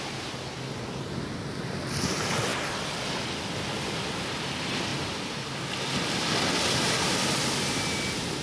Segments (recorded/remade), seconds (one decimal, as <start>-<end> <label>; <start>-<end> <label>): 0.0-8.4 recorded